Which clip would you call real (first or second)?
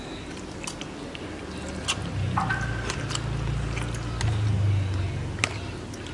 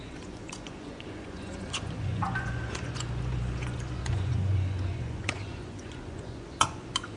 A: first